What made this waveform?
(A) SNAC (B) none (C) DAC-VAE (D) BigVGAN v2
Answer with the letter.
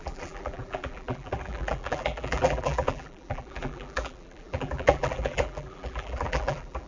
D